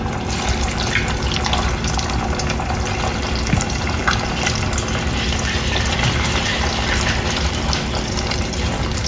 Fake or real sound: real